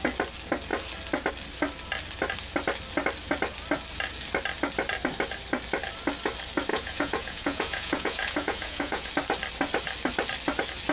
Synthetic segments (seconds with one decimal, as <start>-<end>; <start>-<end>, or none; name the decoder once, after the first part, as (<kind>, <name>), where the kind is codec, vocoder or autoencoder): 6.7-9.1 (vocoder, Vocos)